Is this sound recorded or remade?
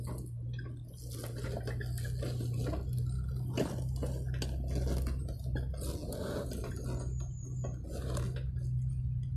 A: recorded